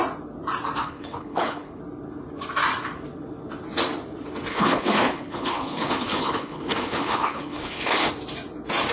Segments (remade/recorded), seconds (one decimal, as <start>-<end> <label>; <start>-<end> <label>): 0.0-0.8 recorded; 0.8-1.8 remade; 1.8-4.5 recorded; 4.5-8.1 remade; 8.1-8.9 recorded